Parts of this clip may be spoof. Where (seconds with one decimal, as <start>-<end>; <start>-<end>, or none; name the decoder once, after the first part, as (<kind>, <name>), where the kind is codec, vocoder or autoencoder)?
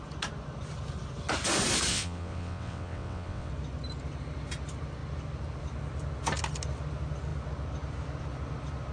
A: 1.9-3.5 (vocoder, WaveNeXt)